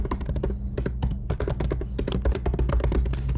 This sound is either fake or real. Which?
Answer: real